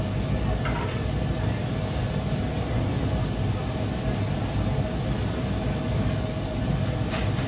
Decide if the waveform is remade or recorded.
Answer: recorded